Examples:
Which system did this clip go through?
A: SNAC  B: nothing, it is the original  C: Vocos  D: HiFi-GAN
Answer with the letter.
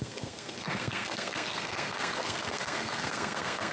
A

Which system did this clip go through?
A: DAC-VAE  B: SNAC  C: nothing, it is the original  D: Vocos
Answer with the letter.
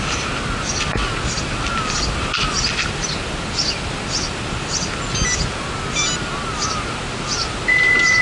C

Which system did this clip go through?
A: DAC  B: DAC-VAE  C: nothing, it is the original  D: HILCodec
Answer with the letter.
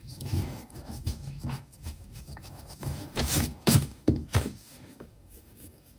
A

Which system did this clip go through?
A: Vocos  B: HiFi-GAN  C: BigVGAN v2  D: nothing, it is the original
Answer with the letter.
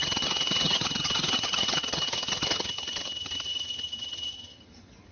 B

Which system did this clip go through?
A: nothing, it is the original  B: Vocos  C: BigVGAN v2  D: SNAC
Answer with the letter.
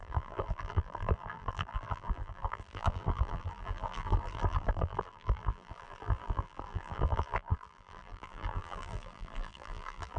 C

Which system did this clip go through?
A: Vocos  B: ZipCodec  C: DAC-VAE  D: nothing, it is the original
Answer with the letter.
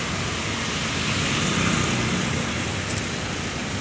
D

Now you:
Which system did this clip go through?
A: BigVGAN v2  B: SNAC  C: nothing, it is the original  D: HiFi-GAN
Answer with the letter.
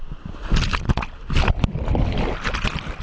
C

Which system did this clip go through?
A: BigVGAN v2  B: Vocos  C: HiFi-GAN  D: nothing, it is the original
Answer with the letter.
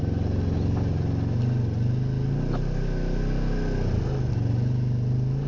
D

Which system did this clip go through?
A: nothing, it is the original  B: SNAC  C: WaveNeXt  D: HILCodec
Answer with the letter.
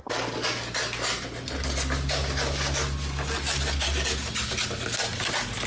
A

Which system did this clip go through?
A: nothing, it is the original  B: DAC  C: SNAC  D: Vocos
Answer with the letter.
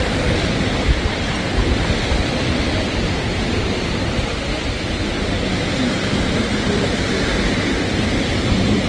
A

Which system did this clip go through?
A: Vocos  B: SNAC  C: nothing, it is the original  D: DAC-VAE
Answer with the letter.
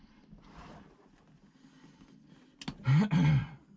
C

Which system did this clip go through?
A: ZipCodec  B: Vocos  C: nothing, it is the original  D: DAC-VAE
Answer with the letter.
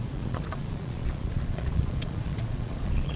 B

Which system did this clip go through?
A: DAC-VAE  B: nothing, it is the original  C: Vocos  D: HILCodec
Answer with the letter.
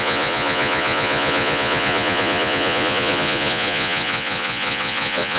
C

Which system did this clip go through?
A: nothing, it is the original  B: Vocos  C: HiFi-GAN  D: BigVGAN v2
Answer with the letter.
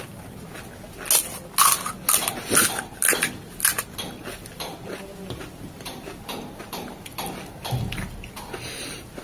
A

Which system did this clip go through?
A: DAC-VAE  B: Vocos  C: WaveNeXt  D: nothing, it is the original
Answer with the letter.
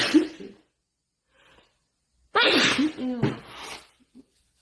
D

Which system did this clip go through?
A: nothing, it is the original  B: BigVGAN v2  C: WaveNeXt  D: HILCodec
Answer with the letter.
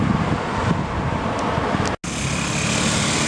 A